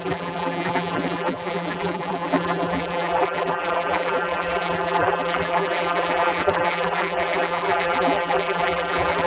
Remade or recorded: remade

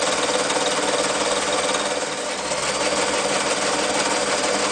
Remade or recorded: recorded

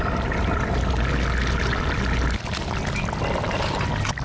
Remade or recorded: recorded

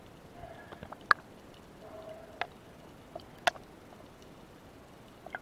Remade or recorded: recorded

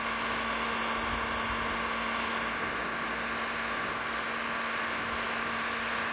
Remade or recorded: recorded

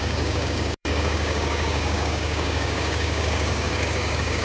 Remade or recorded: remade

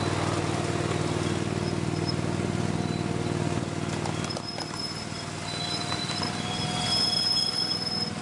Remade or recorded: recorded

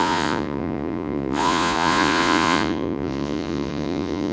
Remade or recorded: remade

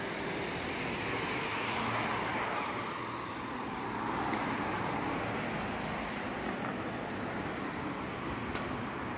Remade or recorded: recorded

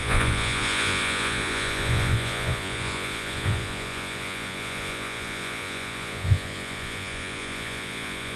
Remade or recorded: remade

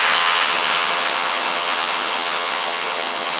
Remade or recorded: remade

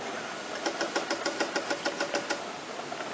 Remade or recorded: recorded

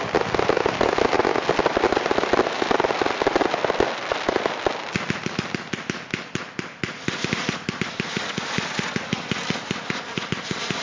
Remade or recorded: recorded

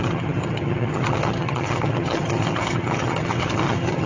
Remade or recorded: remade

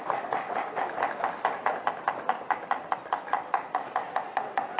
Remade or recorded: recorded